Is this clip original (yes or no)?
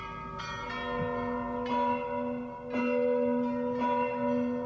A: yes